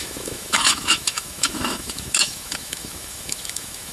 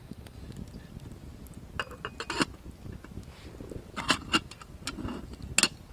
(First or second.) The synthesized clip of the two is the first